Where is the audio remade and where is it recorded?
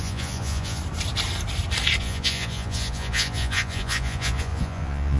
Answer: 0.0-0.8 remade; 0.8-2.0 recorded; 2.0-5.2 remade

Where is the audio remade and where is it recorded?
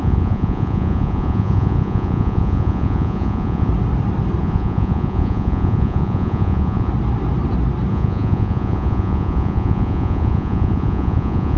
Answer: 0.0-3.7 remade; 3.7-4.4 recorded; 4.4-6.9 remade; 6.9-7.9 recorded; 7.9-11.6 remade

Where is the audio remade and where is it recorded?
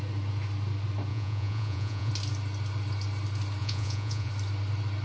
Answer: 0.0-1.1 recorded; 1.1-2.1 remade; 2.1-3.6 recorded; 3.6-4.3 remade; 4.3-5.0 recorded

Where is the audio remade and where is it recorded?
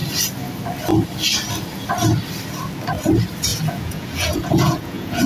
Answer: 0.0-3.5 recorded; 3.5-5.3 remade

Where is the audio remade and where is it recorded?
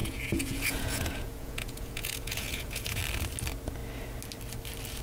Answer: 0.0-3.0 remade; 3.0-5.0 recorded